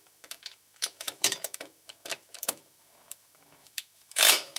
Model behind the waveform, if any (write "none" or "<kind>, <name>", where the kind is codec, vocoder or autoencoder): autoencoder, DAC-VAE